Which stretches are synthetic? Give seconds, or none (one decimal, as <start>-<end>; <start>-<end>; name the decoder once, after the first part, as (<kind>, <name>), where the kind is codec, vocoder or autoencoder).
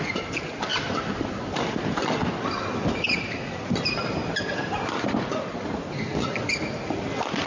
none